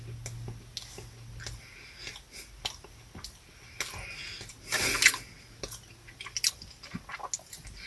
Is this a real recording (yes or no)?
yes